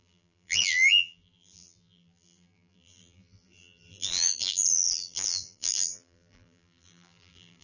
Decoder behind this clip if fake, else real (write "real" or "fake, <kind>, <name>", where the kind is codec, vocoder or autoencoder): fake, vocoder, BigVGAN v2